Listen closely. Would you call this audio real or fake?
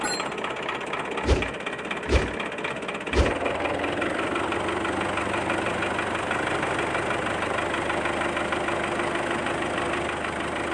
real